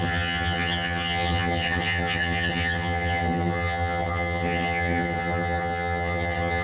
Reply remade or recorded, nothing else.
remade